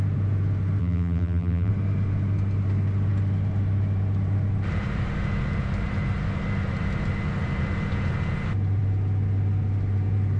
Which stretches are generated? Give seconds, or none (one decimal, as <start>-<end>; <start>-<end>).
0.8-1.7

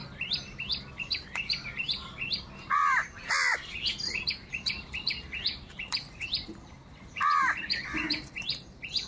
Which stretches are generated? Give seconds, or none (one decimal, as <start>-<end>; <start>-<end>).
0.0-9.1

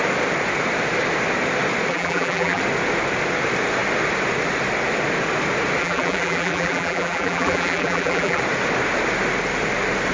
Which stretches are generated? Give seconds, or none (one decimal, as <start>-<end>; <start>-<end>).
1.9-2.6; 5.8-8.4